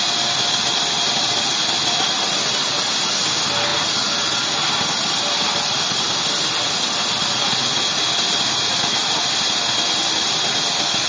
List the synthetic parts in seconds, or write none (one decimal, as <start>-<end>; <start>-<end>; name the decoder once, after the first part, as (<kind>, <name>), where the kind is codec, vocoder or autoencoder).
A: none

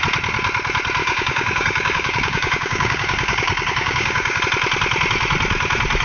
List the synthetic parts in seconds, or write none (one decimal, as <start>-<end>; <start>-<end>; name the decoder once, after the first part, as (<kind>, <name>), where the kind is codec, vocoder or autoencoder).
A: 1.0-4.4 (codec, DAC)